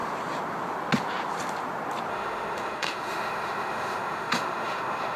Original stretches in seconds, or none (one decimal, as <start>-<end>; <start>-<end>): 0.0-2.1